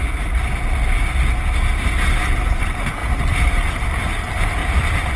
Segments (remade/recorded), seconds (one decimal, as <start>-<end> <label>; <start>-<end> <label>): 0.0-4.6 recorded; 4.6-5.2 remade